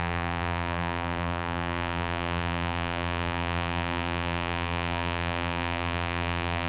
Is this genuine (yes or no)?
no